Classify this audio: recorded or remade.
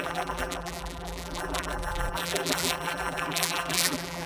remade